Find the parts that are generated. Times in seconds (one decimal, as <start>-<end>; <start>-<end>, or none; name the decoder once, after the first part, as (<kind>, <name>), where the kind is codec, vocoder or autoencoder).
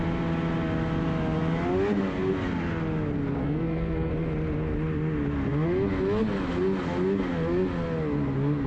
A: 3.4-4.1 (codec, SNAC)